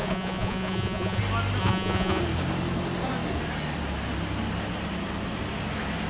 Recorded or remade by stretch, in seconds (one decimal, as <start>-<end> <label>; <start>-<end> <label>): 0.0-1.2 remade; 1.2-1.6 recorded; 1.6-2.2 remade; 2.2-6.1 recorded